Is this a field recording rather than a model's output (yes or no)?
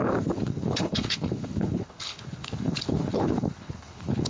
no